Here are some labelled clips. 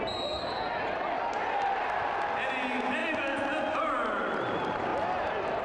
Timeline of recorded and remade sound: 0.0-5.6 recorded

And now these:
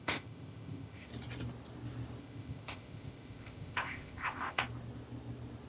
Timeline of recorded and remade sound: 0.0-1.1 remade; 1.1-2.2 recorded; 2.2-4.6 remade; 4.6-5.7 recorded

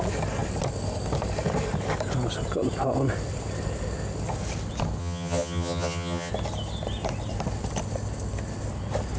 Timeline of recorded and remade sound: 0.0-5.0 recorded; 5.0-6.3 remade; 6.3-9.2 recorded

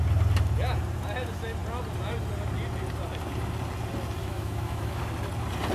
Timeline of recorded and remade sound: 0.0-4.2 recorded; 4.2-5.0 remade; 5.0-5.7 recorded

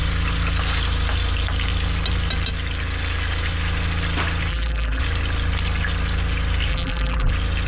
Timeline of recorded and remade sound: 0.0-4.5 recorded; 4.5-5.0 remade; 5.0-6.7 recorded; 6.7-7.3 remade; 7.3-7.7 recorded

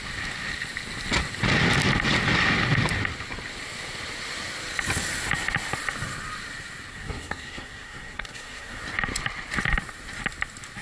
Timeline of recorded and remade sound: 0.0-6.9 recorded; 6.9-8.8 remade; 8.8-10.8 recorded